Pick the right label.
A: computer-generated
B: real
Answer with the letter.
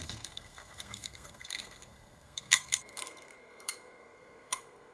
A